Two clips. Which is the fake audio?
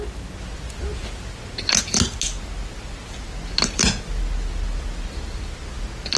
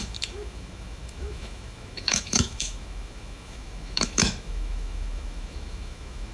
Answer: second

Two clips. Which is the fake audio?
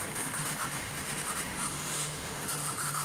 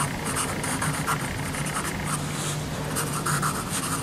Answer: first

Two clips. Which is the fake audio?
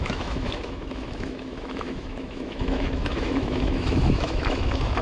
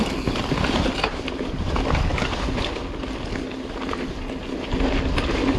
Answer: first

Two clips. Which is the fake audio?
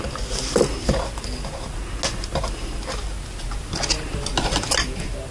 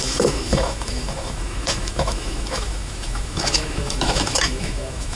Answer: second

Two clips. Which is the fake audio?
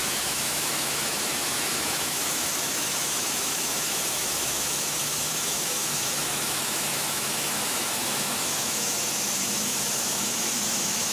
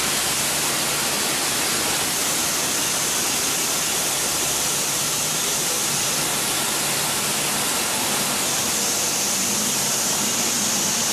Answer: first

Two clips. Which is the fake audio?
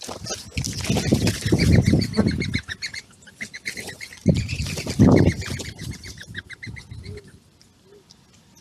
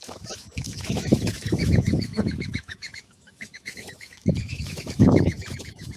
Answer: second